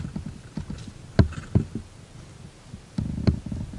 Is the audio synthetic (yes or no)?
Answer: no